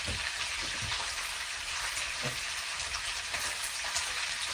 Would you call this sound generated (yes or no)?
yes